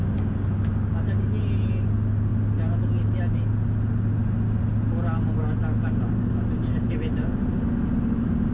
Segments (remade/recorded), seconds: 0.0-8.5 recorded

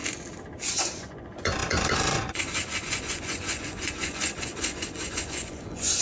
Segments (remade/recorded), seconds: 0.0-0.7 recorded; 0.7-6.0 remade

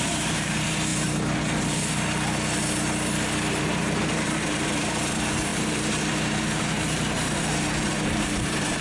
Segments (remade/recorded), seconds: 0.0-0.9 remade; 0.9-3.5 recorded; 3.5-8.8 remade

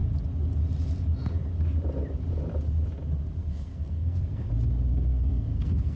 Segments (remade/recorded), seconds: 0.0-3.4 recorded; 3.4-4.5 remade; 4.5-4.9 recorded; 4.9-6.0 remade

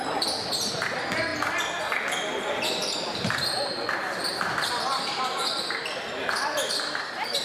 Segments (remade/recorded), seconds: 0.0-7.4 recorded

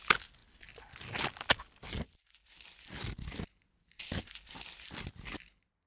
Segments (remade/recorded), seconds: 0.0-5.9 recorded

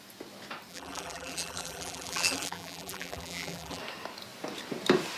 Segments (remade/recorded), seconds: 0.0-0.7 recorded; 0.7-3.8 remade; 3.8-5.2 recorded

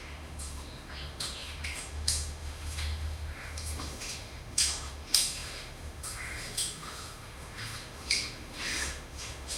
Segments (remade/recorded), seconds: 0.0-9.6 remade